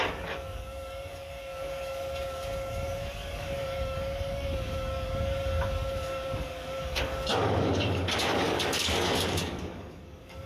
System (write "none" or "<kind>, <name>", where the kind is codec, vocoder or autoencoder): codec, DAC